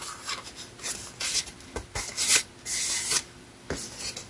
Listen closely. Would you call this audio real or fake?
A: real